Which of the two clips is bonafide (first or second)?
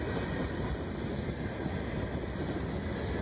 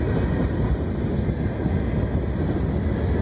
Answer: second